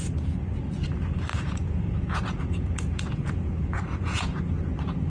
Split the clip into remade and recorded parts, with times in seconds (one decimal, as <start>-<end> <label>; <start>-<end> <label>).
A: 0.0-1.3 recorded; 1.3-4.4 remade; 4.4-5.1 recorded